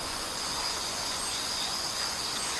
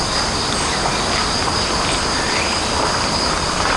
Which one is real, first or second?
second